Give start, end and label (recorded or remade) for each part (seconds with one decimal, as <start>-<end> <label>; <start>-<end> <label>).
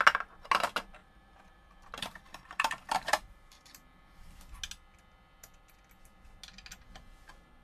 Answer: 0.0-1.0 recorded; 1.0-4.4 remade; 4.4-7.6 recorded